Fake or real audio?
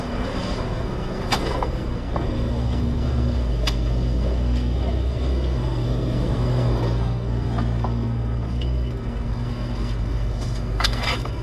fake